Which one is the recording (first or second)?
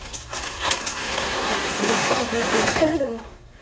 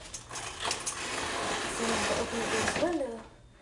second